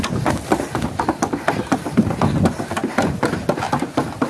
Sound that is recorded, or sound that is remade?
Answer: recorded